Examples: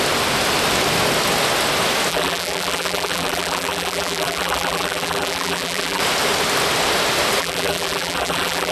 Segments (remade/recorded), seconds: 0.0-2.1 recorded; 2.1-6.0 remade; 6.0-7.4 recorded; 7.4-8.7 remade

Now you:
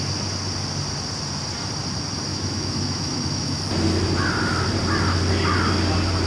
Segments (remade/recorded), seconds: 0.0-2.3 recorded; 2.3-3.6 remade; 3.6-6.3 recorded